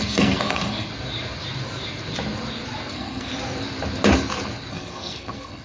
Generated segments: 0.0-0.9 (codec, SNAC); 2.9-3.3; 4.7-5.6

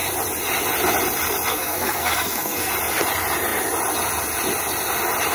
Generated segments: 1.5-2.7 (codec, SNAC)